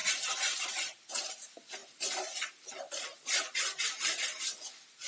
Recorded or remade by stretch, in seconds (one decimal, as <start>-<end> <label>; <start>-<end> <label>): 0.0-1.8 remade; 1.8-5.1 recorded